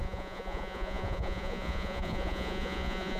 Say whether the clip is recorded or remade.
remade